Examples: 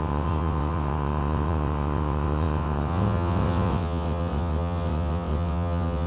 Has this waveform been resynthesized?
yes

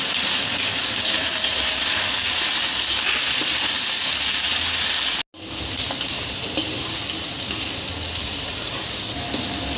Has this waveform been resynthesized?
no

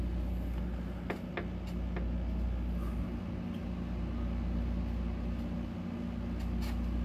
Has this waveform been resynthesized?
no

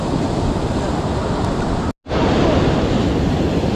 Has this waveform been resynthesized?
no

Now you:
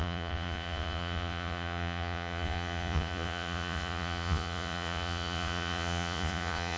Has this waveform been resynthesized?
yes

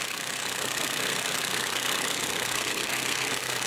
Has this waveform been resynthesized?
yes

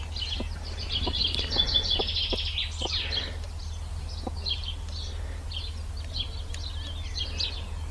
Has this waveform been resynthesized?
no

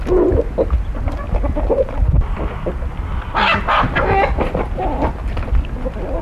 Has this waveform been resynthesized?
no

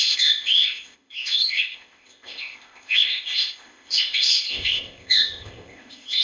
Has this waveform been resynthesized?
yes